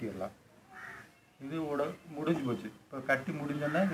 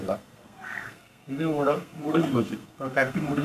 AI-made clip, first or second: second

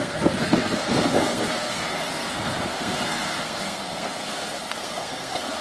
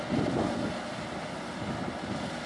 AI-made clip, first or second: first